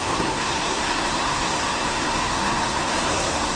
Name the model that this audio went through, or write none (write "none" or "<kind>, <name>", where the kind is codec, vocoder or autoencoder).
codec, SNAC